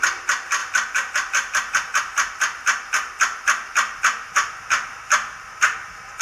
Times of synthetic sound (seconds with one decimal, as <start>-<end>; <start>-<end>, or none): none

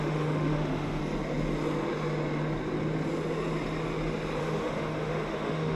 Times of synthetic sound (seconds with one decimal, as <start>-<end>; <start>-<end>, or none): 0.0-1.0; 4.4-5.7

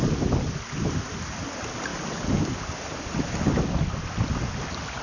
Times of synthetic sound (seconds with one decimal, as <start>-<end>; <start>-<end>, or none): none

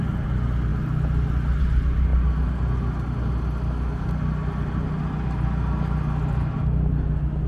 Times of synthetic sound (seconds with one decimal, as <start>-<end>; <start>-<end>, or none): none

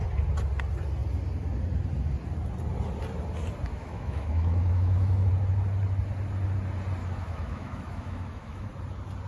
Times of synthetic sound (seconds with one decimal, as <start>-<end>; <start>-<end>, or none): 3.7-5.3; 7.0-8.7